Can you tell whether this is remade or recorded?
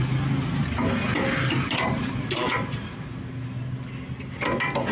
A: recorded